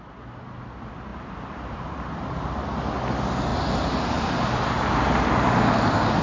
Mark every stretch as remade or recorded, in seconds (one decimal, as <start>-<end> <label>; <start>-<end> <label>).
0.0-1.1 recorded; 1.1-2.8 remade; 2.8-3.5 recorded; 3.5-5.3 remade; 5.3-6.2 recorded